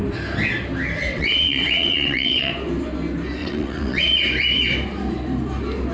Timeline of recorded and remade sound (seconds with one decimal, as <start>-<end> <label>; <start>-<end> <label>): 0.0-1.0 recorded; 1.0-2.5 remade; 2.5-3.4 recorded; 3.4-4.0 remade; 4.0-5.9 recorded